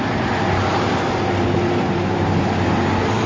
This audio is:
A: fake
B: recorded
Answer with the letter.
B